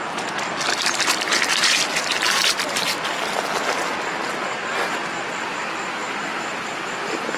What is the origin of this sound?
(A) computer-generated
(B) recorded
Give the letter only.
B